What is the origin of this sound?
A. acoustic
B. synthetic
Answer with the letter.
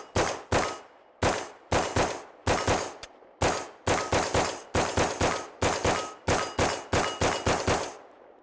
A